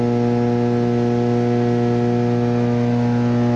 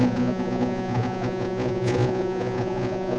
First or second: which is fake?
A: second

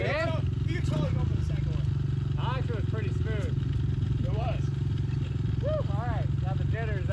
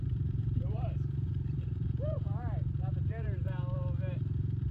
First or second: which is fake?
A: second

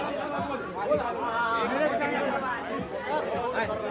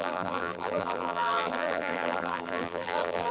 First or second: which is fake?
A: second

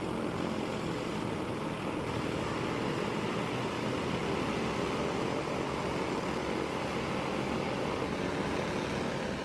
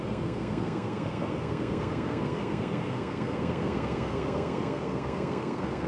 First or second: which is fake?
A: second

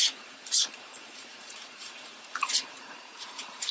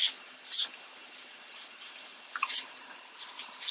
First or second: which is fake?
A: first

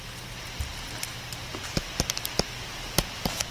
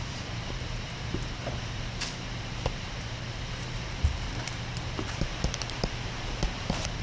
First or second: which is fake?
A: second